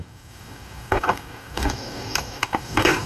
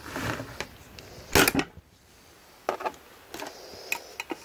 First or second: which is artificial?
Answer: first